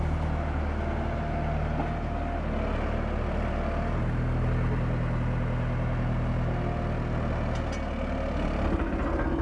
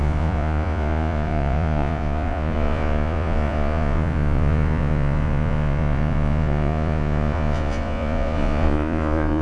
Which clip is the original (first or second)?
first